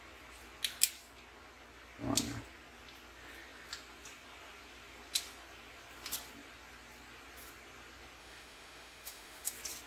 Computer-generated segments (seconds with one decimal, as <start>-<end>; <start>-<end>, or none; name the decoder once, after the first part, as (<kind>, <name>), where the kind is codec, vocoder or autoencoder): 8.2-9.5 (autoencoder, DAC-VAE)